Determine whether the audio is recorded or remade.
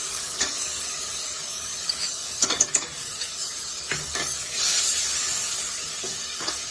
remade